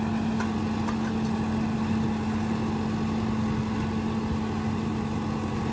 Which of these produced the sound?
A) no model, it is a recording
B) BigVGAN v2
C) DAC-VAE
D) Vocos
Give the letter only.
A